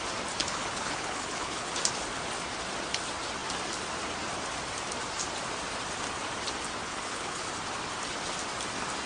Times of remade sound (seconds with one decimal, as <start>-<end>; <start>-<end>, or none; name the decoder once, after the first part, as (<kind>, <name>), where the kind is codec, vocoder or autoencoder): 0.4-1.7 (codec, HILCodec); 6.8-7.5